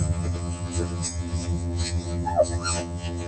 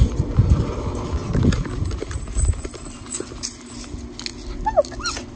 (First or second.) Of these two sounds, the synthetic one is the first